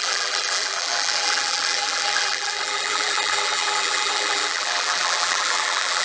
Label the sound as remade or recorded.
remade